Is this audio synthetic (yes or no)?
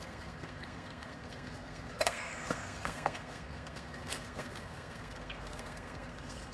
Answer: yes